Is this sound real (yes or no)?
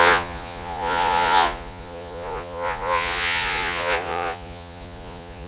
no